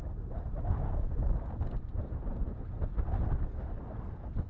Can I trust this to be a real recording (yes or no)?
yes